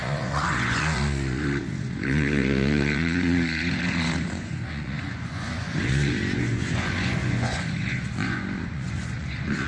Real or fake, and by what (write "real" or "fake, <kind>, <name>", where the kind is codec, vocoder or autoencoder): fake, vocoder, Vocos